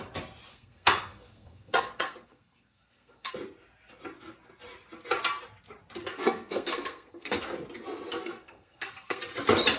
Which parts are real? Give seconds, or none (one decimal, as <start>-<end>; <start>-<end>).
0.0-0.5; 3.3-6.1; 7.4-8.2; 9.2-9.8